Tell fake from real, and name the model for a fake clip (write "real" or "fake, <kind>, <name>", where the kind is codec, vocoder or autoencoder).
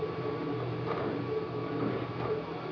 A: real